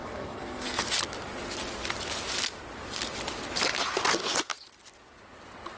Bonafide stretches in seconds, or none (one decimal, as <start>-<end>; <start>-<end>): 0.9-5.8